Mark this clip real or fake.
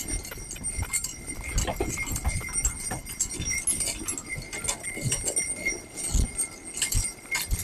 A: real